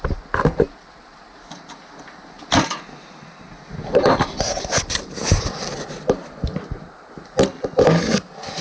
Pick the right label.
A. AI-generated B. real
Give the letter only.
B